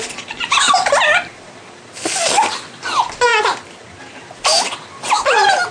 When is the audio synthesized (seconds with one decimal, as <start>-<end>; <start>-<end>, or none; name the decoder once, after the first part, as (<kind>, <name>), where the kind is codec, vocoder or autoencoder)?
none